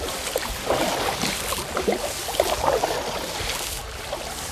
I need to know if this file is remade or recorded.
recorded